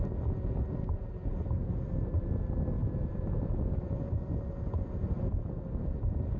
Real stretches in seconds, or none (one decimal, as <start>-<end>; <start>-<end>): 0.0-2.8; 4.1-6.4